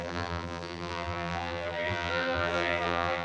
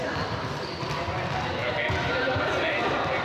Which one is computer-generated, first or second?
first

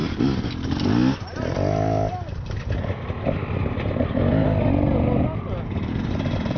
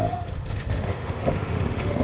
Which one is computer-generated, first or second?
second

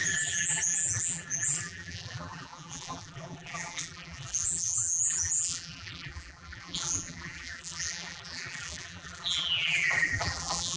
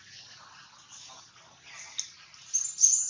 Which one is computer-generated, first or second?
first